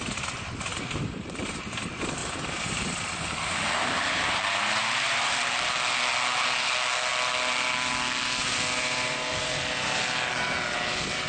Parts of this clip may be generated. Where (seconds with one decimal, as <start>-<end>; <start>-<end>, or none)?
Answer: 0.7-1.6; 2.2-5.3